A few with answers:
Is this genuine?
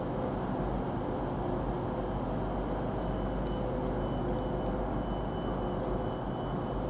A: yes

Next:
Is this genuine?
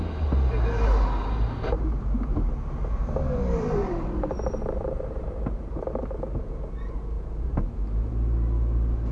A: yes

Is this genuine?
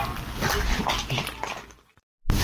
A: yes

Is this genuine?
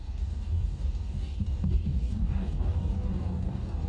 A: no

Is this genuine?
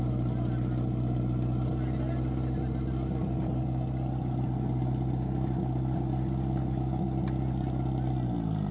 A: yes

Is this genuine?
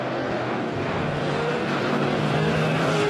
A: no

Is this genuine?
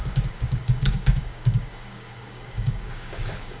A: no